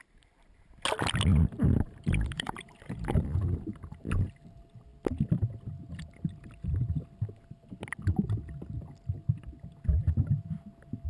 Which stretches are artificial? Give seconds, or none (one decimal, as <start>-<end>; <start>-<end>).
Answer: 1.3-4.4